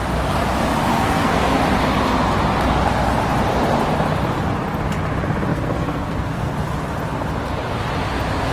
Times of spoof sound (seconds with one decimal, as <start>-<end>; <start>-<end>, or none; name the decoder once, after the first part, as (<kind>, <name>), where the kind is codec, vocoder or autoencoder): 0.9-1.5 (codec, SNAC); 5.5-6.5